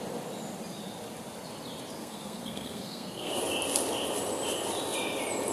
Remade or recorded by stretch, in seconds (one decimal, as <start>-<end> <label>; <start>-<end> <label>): 0.0-2.0 recorded; 2.0-3.4 remade; 3.4-5.5 recorded